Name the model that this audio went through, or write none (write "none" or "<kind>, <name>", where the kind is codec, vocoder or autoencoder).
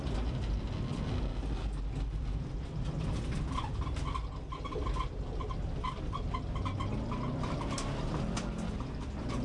none